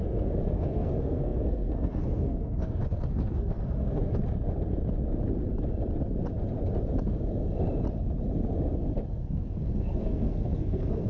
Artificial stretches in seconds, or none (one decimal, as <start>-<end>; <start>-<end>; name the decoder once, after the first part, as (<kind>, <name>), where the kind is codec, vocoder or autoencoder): 0.0-4.2 (codec, SNAC); 9.1-11.1